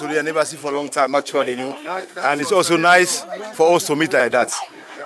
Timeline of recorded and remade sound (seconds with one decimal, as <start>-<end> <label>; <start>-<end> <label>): 0.0-0.6 recorded; 0.6-2.4 remade; 2.4-4.2 recorded; 4.2-5.1 remade